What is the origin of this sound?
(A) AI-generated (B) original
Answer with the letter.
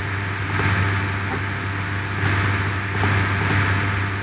B